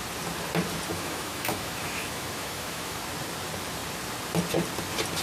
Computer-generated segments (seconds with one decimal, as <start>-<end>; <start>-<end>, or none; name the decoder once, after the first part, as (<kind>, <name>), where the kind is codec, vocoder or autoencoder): 0.9-3.0 (autoencoder, DAC-VAE)